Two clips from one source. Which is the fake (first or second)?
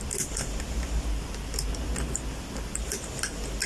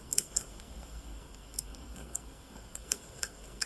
second